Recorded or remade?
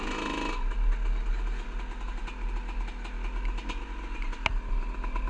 recorded